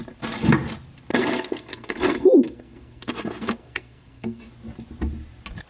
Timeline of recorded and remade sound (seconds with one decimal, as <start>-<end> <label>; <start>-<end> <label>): 0.0-1.1 recorded; 1.1-4.5 remade; 4.5-5.7 recorded